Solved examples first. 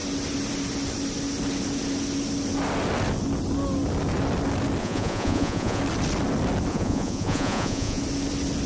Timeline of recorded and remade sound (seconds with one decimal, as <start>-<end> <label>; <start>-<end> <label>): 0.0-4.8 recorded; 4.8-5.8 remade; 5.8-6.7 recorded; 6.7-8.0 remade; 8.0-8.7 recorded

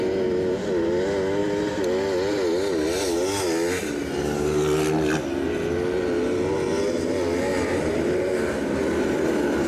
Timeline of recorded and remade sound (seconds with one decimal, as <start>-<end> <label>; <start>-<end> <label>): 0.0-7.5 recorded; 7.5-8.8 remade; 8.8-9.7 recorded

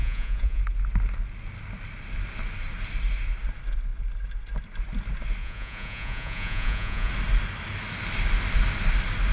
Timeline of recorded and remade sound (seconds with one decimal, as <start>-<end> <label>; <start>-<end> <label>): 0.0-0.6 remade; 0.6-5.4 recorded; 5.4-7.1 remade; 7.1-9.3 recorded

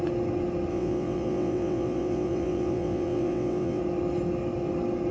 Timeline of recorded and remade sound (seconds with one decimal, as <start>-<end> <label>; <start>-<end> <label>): 0.0-0.7 recorded; 0.7-3.8 remade; 3.8-5.1 recorded

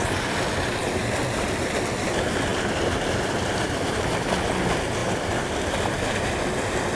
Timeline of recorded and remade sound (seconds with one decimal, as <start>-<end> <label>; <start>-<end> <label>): 0.0-6.9 recorded

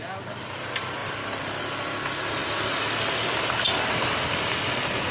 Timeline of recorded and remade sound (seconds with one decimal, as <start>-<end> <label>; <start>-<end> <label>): 0.0-5.1 recorded